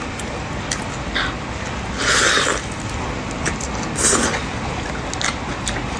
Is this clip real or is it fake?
real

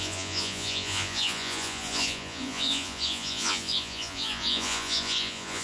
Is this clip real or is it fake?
fake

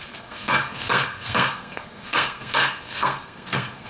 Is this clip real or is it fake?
fake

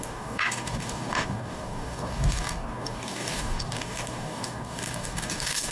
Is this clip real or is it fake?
fake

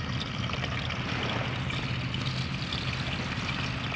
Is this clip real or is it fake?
real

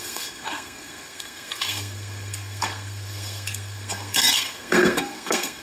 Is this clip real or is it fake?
fake